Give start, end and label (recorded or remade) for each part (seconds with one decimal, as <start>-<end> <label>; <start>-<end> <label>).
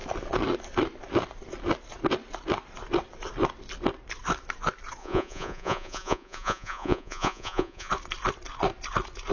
0.0-5.0 recorded; 5.0-7.9 remade; 7.9-9.3 recorded